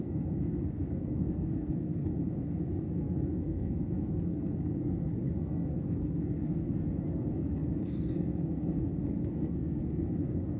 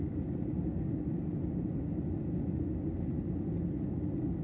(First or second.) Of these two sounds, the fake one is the first